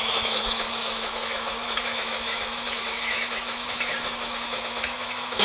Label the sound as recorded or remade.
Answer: remade